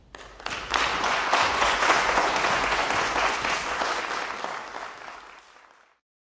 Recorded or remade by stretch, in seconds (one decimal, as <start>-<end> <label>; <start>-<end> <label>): 0.0-0.9 recorded; 0.9-4.0 remade; 4.0-6.3 recorded